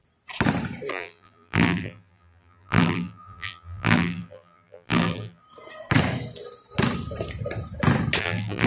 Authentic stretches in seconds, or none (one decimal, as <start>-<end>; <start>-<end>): 0.0-0.9; 5.4-8.2